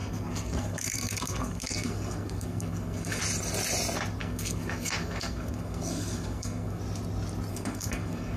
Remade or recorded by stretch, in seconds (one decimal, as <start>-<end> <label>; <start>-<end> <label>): 0.0-3.2 remade; 3.2-4.2 recorded; 4.2-6.8 remade; 6.8-7.5 recorded; 7.5-8.4 remade